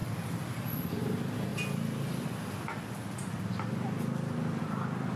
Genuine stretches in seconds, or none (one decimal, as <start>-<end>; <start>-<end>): 0.0-5.2